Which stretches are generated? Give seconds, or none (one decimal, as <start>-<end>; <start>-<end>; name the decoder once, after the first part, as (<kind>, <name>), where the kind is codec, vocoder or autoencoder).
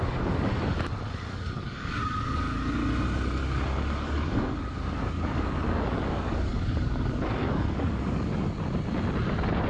0.0-0.5 (codec, DAC); 1.3-2.8; 3.4-8.3